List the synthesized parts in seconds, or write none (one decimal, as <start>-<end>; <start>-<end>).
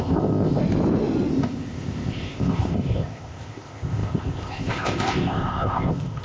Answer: 0.0-0.6; 1.3-6.2